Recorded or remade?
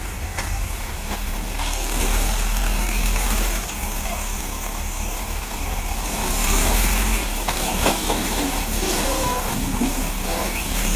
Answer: remade